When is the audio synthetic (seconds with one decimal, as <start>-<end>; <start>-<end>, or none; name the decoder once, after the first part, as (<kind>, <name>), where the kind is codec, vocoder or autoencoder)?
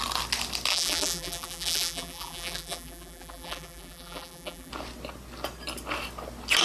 0.7-4.7 (vocoder, BigVGAN v2)